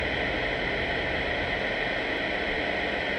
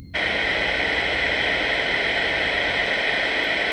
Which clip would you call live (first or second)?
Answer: first